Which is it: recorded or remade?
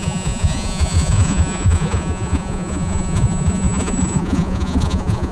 remade